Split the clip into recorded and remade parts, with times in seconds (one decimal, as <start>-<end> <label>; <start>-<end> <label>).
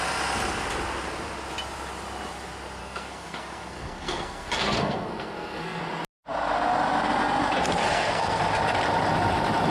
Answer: 0.0-2.8 recorded; 2.8-5.8 remade; 5.8-7.8 recorded; 7.8-8.4 remade; 8.4-9.7 recorded